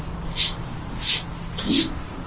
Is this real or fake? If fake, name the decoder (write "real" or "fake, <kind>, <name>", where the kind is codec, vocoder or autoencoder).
real